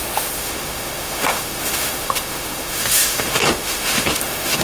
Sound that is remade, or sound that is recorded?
remade